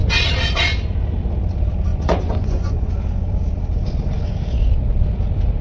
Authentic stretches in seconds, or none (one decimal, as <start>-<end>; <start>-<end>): 0.0-1.9; 2.9-5.6